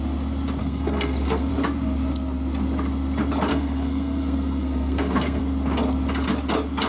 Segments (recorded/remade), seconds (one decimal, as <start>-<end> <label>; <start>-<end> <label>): 0.0-0.6 recorded; 0.6-1.5 remade; 1.5-3.5 recorded; 3.5-5.4 remade; 5.4-6.9 recorded